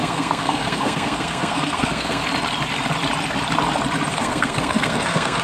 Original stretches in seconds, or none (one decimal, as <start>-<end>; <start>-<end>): 2.2-4.1